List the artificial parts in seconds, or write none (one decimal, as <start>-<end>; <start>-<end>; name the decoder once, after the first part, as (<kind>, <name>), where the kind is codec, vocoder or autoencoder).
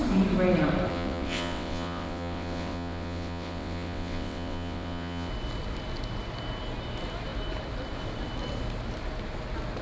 0.9-5.3 (vocoder, WaveNeXt)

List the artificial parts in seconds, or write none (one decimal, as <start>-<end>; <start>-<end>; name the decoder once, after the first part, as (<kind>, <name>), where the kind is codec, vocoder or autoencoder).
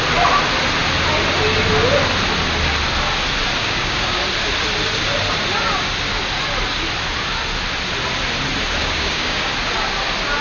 3.6-4.2 (codec, DAC); 8.8-9.5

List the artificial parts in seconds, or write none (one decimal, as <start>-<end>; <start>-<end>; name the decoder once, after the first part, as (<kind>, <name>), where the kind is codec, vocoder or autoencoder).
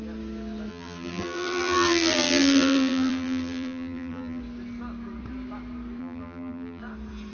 0.7-4.4 (vocoder, BigVGAN v2); 6.0-6.8